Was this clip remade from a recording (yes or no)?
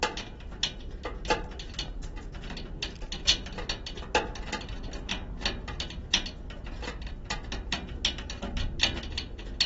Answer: no